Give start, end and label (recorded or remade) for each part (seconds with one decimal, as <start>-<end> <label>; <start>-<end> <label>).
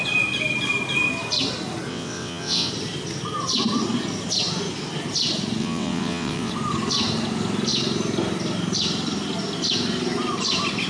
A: 0.0-1.9 recorded; 1.9-2.7 remade; 2.7-5.6 recorded; 5.6-6.5 remade; 6.5-10.9 recorded